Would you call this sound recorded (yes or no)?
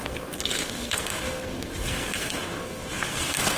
no